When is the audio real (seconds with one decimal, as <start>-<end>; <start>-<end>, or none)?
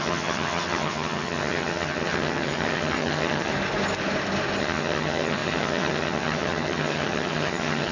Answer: 3.5-4.6